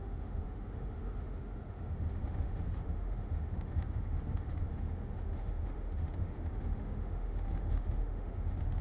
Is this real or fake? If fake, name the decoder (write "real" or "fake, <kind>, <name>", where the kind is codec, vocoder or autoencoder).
fake, autoencoder, DAC-VAE